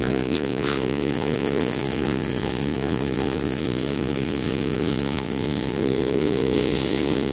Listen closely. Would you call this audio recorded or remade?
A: remade